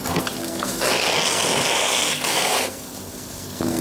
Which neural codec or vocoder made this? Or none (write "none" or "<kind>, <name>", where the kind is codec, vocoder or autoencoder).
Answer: codec, SNAC